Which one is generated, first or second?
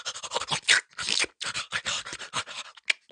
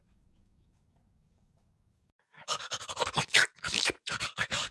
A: second